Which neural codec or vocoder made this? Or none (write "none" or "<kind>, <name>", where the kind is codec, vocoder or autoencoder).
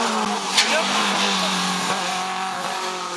none